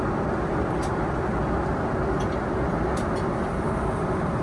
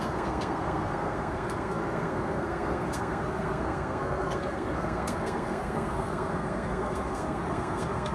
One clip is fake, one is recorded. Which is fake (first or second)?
second